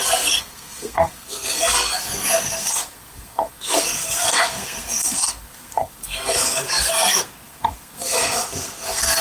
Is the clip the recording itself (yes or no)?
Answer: no